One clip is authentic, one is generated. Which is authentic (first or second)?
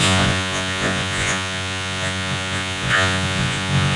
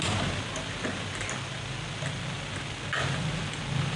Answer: second